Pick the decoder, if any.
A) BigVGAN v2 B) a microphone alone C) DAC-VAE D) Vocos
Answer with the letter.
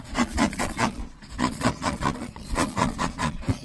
D